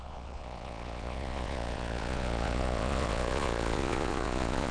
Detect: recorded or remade remade